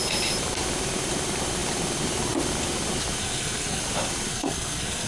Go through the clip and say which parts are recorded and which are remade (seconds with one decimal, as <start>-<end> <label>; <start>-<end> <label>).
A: 0.0-3.2 recorded; 3.2-3.8 remade; 3.8-4.3 recorded; 4.3-5.1 remade